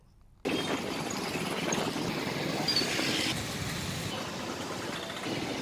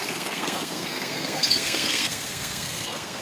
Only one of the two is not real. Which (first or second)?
second